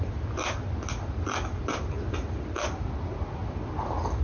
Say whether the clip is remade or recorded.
recorded